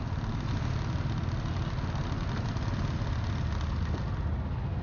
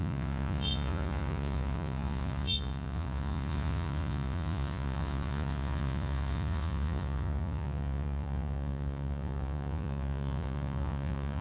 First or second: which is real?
first